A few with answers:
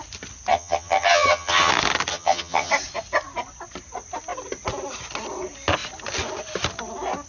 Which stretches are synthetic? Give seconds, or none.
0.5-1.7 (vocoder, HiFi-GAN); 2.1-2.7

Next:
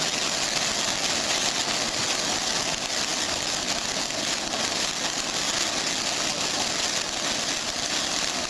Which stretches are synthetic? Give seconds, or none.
none